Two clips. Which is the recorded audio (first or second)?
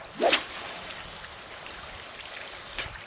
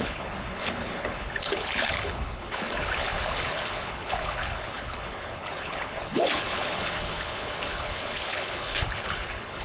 first